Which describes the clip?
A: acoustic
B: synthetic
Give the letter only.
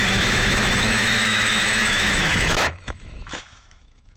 B